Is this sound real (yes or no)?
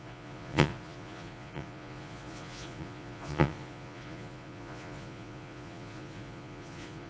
no